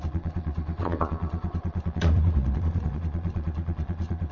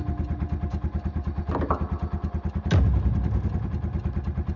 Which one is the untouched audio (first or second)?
second